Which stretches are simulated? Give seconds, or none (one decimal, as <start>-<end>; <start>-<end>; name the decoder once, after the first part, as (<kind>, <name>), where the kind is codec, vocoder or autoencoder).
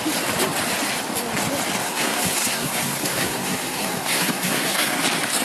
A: 1.8-5.0 (codec, SNAC)